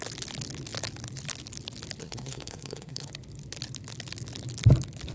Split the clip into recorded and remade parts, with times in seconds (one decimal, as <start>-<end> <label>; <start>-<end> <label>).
0.0-2.0 recorded; 2.0-3.1 remade; 3.1-5.1 recorded